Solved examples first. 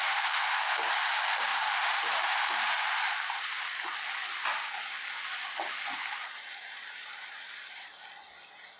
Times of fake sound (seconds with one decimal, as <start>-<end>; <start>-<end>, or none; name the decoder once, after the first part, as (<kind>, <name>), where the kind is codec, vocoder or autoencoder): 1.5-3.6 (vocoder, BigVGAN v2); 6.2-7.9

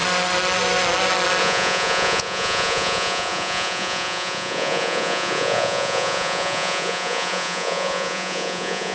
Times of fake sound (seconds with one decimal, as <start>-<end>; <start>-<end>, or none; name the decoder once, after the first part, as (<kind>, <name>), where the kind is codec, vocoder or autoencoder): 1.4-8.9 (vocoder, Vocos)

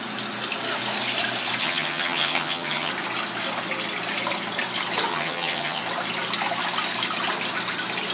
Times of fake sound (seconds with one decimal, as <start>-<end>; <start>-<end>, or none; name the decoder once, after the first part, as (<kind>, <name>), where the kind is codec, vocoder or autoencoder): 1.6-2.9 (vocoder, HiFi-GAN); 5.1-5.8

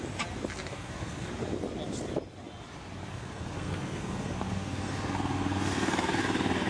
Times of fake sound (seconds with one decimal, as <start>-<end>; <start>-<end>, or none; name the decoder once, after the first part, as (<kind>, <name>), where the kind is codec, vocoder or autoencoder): 0.7-1.3 (codec, SNAC); 3.1-6.1